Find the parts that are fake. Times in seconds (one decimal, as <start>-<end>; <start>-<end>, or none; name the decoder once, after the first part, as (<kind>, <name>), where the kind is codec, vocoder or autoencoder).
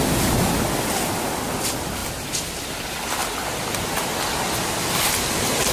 none